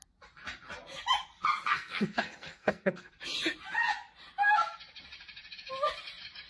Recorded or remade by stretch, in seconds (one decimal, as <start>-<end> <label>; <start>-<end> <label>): 0.0-1.7 recorded; 1.7-3.1 remade; 3.1-6.5 recorded